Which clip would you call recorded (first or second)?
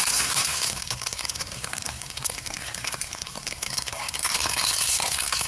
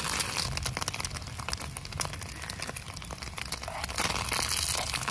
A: second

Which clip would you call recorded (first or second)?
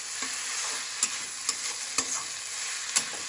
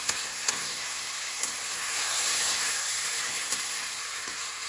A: first